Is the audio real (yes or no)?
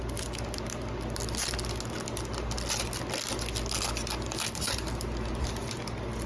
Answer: yes